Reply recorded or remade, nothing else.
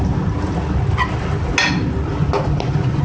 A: recorded